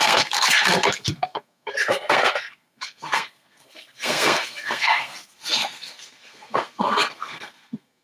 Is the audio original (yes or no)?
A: no